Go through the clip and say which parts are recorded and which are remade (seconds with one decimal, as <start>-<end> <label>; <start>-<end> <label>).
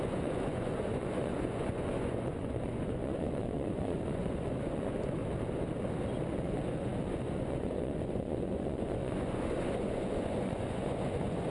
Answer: 0.0-5.2 remade; 5.2-6.3 recorded; 6.3-11.5 remade